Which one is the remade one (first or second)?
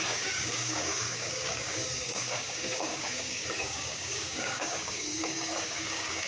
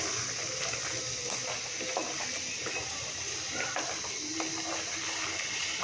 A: first